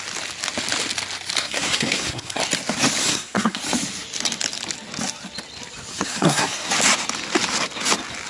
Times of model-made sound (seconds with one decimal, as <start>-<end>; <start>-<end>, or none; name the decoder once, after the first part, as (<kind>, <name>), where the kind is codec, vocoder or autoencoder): 1.4-2.4 (codec, SNAC); 3.0-3.6; 5.9-6.7